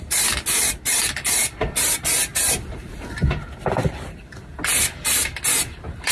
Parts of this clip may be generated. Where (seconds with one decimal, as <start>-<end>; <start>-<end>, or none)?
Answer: none